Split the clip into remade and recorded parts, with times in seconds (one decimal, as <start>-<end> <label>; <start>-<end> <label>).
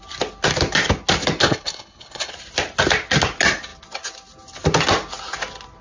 0.0-1.4 recorded; 1.4-2.3 remade; 2.3-5.8 recorded